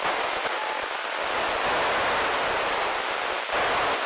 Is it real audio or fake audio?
real